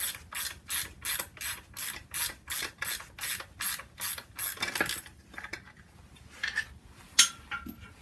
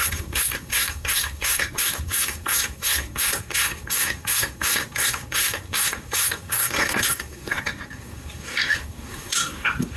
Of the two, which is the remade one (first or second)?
second